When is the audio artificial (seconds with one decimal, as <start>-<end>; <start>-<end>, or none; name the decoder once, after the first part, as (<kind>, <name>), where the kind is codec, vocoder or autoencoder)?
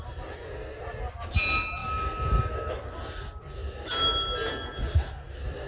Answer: none